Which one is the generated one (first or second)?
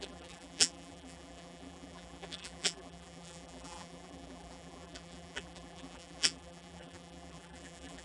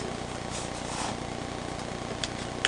first